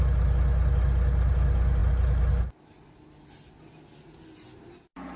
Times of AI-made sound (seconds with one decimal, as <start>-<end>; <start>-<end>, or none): none